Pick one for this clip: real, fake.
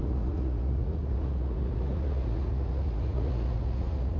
fake